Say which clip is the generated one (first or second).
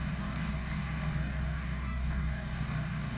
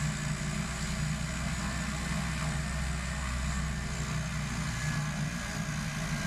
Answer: first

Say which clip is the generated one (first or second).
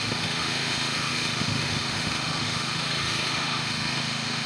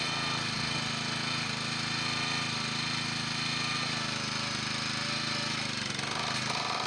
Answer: first